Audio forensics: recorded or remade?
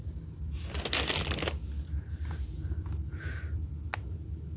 recorded